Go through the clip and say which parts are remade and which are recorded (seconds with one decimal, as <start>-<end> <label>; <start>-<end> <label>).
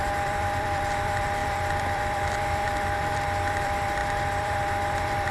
0.0-5.3 remade